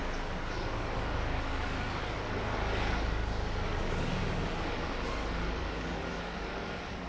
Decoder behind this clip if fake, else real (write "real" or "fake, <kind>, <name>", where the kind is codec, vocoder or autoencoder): fake, codec, DAC